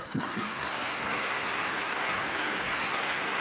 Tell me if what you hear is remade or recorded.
remade